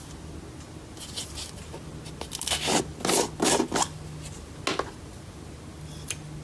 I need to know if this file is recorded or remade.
recorded